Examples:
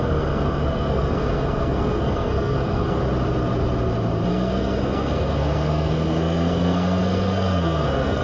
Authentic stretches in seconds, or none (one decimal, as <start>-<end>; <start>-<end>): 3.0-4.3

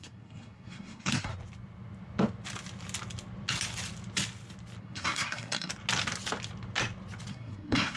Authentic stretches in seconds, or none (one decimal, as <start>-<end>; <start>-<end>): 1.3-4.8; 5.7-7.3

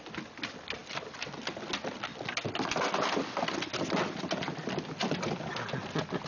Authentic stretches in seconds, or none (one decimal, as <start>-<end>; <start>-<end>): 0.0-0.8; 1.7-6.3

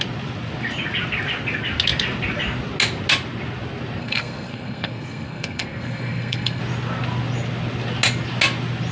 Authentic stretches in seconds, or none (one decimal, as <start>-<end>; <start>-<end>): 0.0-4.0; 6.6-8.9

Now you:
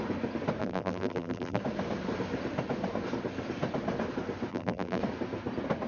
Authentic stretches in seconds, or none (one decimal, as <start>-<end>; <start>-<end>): 0.0-0.6; 1.6-4.5; 5.0-5.9

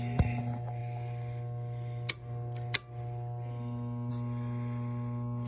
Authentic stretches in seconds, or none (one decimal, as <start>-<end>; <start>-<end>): 0.0-5.5

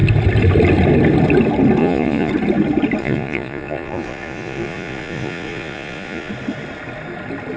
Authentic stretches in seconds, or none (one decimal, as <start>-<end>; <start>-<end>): 0.0-1.8; 2.3-3.0; 6.3-7.6